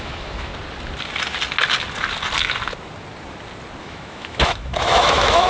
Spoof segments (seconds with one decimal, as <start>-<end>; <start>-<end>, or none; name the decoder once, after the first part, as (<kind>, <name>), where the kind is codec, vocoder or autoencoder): 0.0-0.5 (autoencoder, DAC-VAE); 3.8-5.5